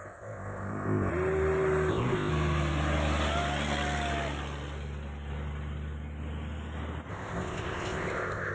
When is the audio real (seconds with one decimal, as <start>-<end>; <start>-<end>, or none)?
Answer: 1.1-1.9; 2.3-7.1